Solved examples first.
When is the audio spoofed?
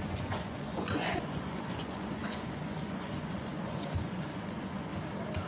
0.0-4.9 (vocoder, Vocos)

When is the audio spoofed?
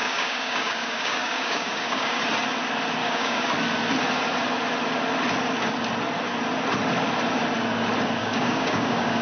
0.0-2.2 (codec, DAC); 3.0-3.5; 8.2-9.2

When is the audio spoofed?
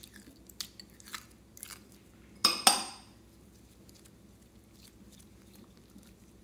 none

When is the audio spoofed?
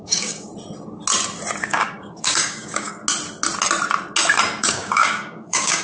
0.0-0.5 (codec, DAC); 1.6-3.0; 4.6-5.8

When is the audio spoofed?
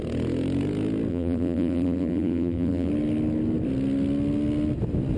1.1-2.9 (vocoder, BigVGAN v2)